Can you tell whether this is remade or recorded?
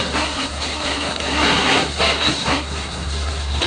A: remade